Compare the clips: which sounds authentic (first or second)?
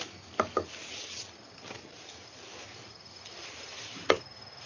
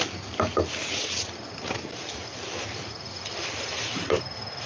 first